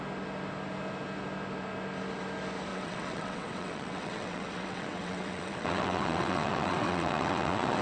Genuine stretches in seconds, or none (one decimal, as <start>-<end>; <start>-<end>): 0.0-2.7